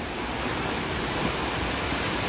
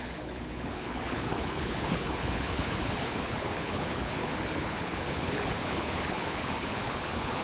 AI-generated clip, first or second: second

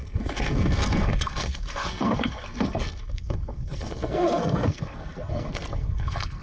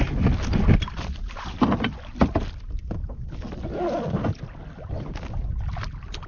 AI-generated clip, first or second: first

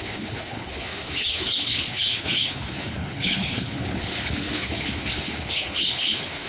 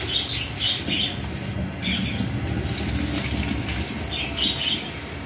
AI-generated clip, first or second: first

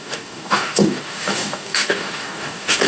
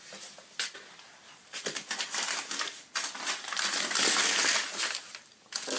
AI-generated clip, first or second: first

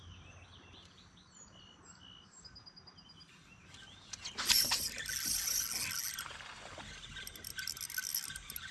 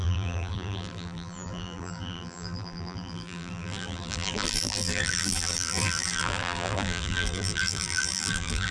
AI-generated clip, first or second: second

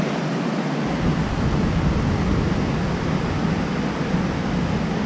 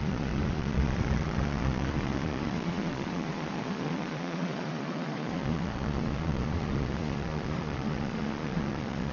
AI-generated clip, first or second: second